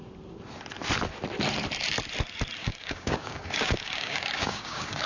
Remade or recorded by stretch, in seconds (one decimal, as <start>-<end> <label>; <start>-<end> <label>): 0.0-2.6 recorded; 2.6-5.1 remade